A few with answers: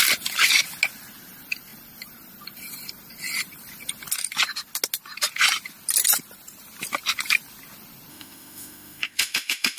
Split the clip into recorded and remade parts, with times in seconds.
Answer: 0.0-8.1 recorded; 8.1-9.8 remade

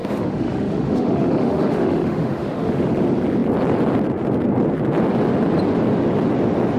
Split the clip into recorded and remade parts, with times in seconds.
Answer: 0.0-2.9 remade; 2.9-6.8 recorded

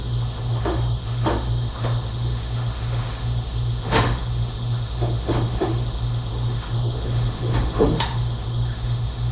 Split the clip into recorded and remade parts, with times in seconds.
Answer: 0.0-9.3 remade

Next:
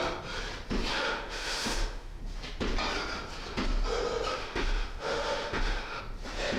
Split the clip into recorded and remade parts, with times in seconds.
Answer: 0.0-0.9 recorded; 0.9-2.2 remade; 2.2-4.3 recorded; 4.3-6.0 remade; 6.0-6.6 recorded

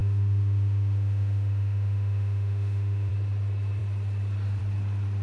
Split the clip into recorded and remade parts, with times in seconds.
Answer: 0.0-3.1 remade; 3.1-5.2 recorded